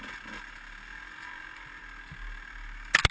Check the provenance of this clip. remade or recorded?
recorded